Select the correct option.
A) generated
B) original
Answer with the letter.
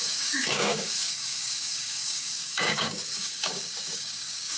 A